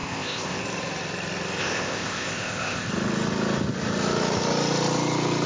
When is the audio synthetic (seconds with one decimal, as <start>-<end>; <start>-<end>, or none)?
0.0-0.6; 1.6-2.9